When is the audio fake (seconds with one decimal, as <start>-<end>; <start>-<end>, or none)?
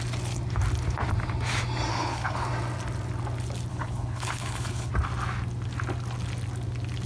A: 1.9-2.5; 3.7-4.9